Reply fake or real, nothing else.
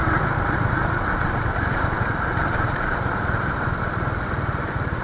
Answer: fake